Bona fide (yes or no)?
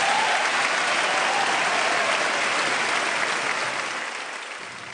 yes